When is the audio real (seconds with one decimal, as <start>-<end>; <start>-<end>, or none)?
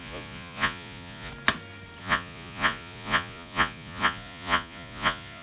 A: 1.3-2.0